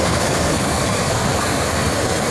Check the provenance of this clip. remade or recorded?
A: remade